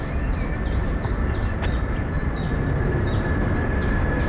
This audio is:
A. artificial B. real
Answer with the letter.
A